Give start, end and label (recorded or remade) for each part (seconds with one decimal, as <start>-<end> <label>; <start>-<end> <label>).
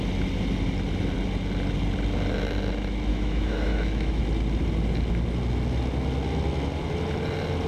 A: 0.0-3.1 recorded; 3.1-4.2 remade; 4.2-7.7 recorded